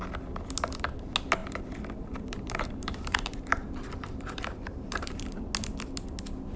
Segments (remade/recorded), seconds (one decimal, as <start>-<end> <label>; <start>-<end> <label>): 0.0-1.4 recorded; 1.4-5.4 remade; 5.4-6.6 recorded